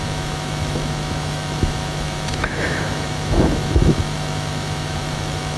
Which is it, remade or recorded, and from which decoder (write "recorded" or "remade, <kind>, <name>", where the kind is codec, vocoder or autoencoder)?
remade, autoencoder, DAC-VAE